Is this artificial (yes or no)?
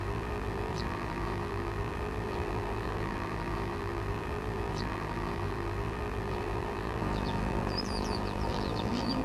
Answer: yes